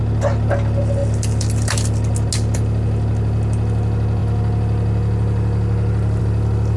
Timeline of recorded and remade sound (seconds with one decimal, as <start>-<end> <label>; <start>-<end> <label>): 0.0-6.8 recorded